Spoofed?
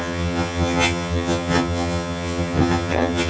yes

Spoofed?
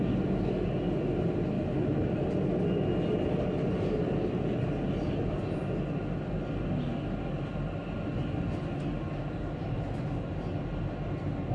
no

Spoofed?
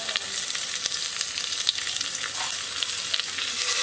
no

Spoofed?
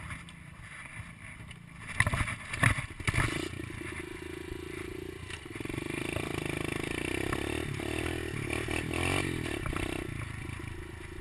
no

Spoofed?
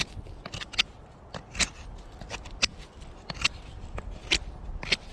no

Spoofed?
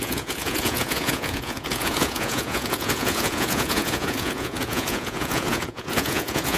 yes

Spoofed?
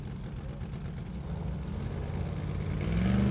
no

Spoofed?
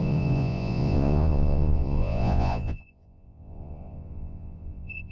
yes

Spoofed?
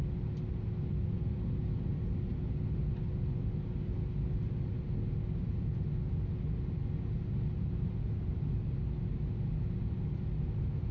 no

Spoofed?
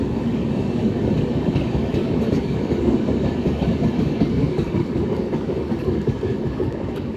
yes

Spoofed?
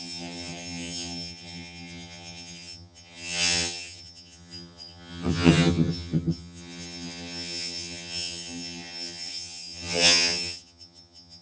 yes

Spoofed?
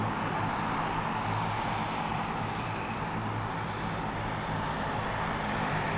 no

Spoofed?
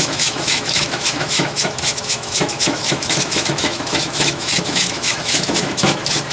yes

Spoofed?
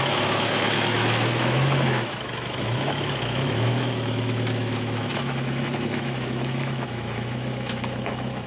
yes